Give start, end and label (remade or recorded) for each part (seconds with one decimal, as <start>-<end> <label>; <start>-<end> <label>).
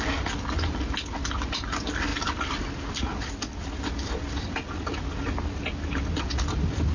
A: 0.0-6.9 recorded